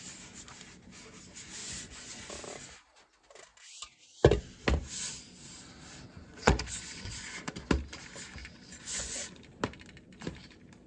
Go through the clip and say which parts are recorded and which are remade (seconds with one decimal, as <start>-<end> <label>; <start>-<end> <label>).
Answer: 0.0-1.6 recorded; 1.6-2.3 remade; 2.3-6.2 recorded; 6.2-7.5 remade; 7.5-8.4 recorded; 8.4-9.4 remade; 9.4-10.9 recorded